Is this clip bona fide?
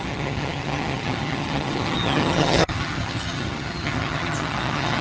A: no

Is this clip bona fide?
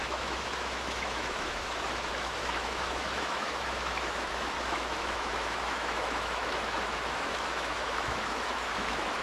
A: no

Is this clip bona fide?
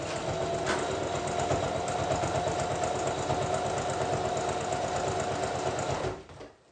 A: yes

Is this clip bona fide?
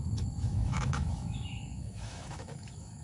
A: no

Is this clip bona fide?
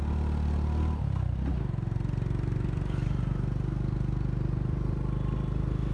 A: yes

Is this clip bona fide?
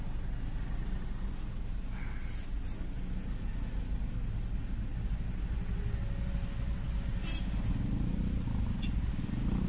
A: yes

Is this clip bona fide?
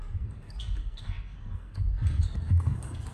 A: no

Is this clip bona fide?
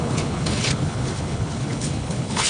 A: no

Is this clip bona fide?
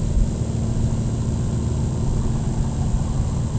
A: yes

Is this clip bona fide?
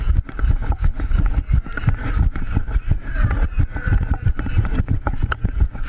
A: no